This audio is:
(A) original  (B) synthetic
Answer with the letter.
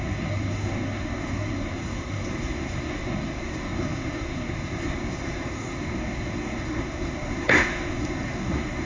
B